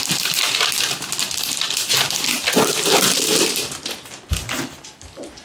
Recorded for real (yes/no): yes